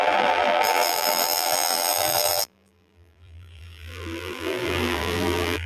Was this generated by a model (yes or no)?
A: yes